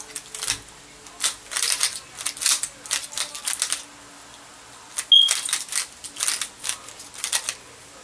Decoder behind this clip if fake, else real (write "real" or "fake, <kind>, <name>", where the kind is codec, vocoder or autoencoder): real